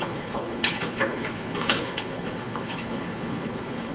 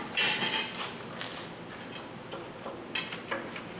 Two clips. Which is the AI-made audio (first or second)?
first